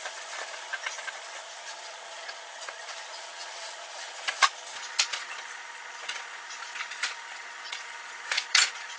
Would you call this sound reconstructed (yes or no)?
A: yes